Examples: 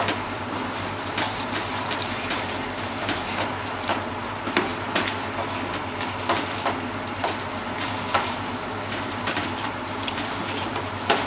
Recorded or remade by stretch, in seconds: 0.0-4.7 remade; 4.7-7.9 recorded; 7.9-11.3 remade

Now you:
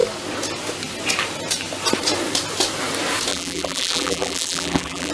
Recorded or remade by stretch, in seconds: 0.0-3.3 recorded; 3.3-5.1 remade

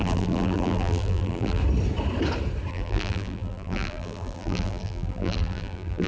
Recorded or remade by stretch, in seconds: 0.0-1.6 remade; 1.6-2.7 recorded; 2.7-6.1 remade

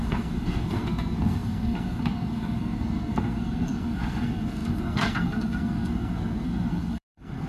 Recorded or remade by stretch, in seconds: 0.0-7.5 remade

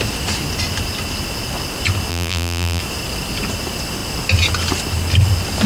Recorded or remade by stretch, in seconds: 0.0-2.1 recorded; 2.1-2.8 remade; 2.8-5.7 recorded